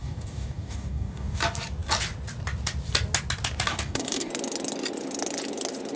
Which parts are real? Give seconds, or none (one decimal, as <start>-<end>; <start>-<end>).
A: 1.4-3.7; 4.3-6.0